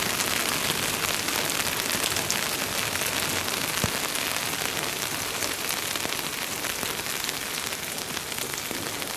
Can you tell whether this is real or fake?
real